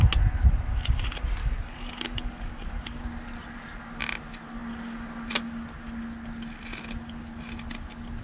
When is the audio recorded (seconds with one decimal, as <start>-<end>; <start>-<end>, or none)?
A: 0.0-1.4; 3.0-8.2